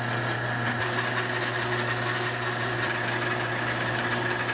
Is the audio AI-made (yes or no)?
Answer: no